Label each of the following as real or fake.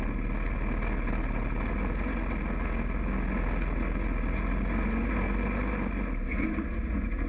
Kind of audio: real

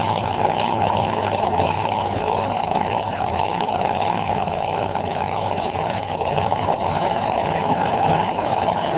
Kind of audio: fake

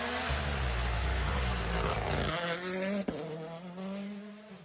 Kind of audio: real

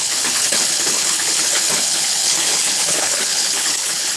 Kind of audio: fake